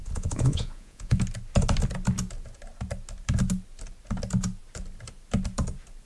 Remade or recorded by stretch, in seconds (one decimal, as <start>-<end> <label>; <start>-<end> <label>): 0.0-1.2 remade; 1.2-6.1 recorded